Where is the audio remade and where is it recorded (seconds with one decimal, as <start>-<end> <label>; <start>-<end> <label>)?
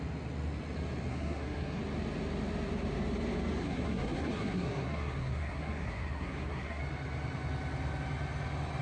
0.0-1.1 recorded; 1.1-1.8 remade; 1.8-3.6 recorded; 3.6-6.8 remade; 6.8-8.8 recorded